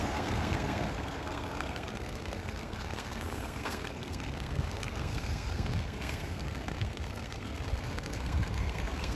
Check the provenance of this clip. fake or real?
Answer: fake